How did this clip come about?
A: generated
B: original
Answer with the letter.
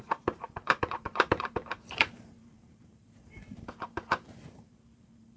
A